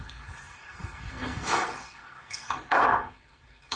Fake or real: fake